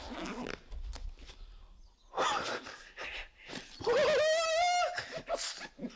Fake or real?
real